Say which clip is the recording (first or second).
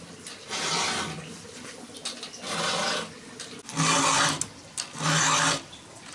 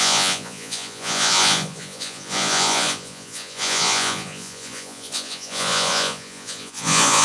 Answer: first